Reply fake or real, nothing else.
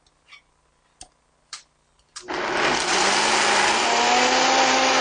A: real